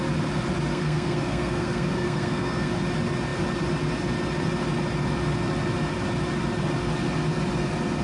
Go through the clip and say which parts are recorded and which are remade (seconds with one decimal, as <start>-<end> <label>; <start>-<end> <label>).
0.0-0.7 recorded; 0.7-2.7 remade; 2.7-8.0 recorded